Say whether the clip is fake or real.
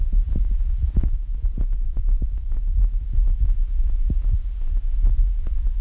fake